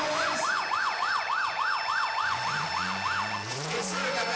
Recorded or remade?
remade